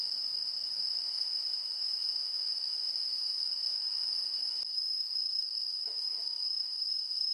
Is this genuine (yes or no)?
no